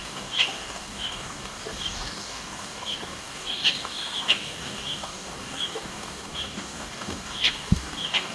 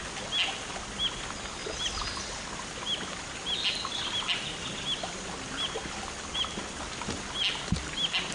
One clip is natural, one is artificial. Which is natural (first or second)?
second